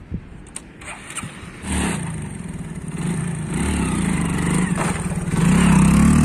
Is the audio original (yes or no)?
yes